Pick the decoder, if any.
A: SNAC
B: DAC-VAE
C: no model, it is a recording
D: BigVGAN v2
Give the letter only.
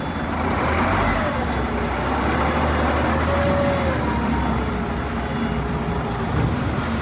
C